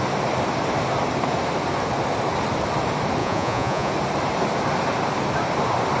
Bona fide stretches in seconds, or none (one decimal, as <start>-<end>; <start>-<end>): 0.0-3.2; 3.9-6.0